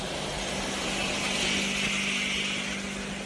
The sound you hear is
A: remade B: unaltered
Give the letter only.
B